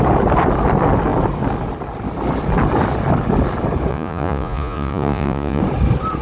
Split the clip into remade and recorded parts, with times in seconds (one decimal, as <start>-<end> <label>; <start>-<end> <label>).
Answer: 0.0-3.9 recorded; 3.9-5.6 remade; 5.6-6.2 recorded